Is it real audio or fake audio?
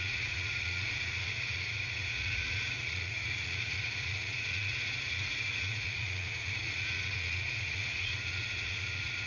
fake